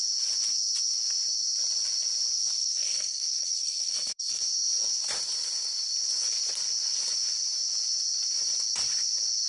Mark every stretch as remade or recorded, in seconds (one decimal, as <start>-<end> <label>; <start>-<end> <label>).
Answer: 0.0-2.6 recorded; 2.6-4.4 remade; 4.4-9.5 recorded

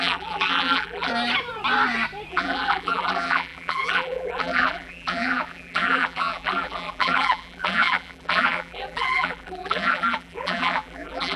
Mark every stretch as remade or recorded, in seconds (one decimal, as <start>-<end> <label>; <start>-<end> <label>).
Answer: 0.0-1.1 remade; 1.1-2.3 recorded; 2.3-11.4 remade

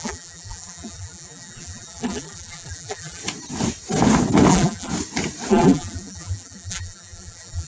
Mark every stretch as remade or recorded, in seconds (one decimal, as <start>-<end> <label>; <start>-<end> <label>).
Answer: 0.0-3.2 remade; 3.2-4.5 recorded; 4.5-4.9 remade; 4.9-5.5 recorded; 5.5-7.7 remade

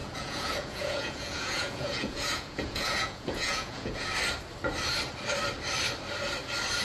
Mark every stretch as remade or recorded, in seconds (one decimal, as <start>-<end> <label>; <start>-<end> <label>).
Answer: 0.0-4.1 remade; 4.1-6.8 recorded

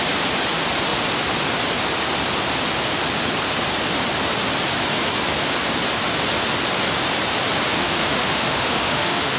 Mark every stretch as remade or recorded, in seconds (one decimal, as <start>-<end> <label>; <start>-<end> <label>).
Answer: 0.0-7.8 recorded; 7.8-9.4 remade

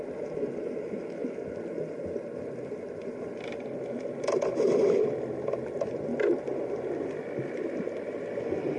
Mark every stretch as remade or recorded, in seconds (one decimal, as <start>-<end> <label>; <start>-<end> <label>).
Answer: 0.0-8.8 recorded

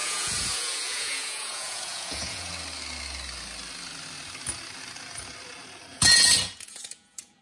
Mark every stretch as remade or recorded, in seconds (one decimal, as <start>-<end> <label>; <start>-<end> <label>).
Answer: 0.0-2.5 remade; 2.5-5.9 recorded; 5.9-7.4 remade

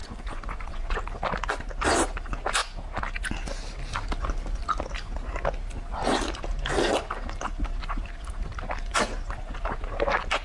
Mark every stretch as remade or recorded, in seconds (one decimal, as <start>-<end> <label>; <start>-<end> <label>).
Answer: 0.0-1.0 remade; 1.0-10.4 recorded